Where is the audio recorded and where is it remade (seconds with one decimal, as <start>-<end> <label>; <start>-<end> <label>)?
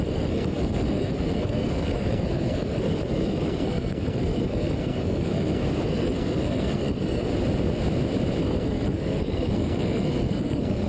0.0-7.3 remade; 7.3-8.4 recorded; 8.4-10.9 remade